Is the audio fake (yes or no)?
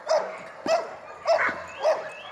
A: no